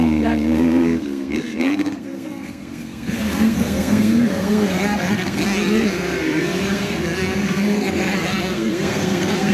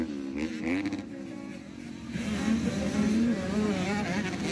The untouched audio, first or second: second